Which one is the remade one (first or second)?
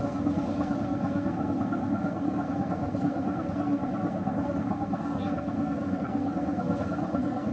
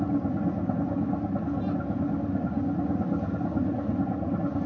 first